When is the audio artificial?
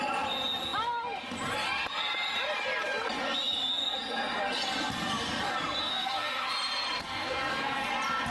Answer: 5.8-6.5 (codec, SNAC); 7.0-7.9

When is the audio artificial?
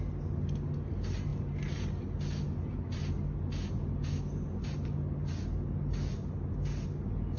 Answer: none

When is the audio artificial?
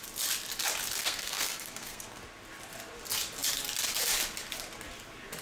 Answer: 1.0-2.2 (codec, SNAC)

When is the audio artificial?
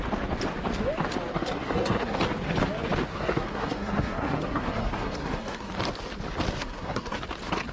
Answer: 1.3-2.2 (codec, SNAC); 3.1-5.7; 6.6-7.2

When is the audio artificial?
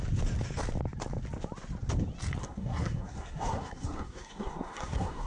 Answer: 2.4-5.3 (codec, SNAC)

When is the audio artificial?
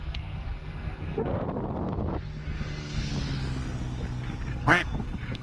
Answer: 0.0-1.3 (codec, SNAC); 2.4-3.1; 4.5-5.4